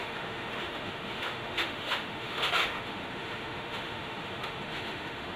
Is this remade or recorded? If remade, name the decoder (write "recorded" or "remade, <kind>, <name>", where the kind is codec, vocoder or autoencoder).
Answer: remade, autoencoder, DAC-VAE